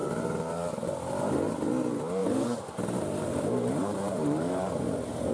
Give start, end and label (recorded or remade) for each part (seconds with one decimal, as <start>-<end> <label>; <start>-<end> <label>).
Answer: 0.0-1.3 remade; 1.3-2.2 recorded; 2.2-5.3 remade